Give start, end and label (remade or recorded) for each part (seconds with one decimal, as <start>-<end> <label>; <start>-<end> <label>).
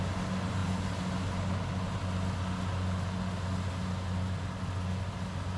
0.0-5.6 recorded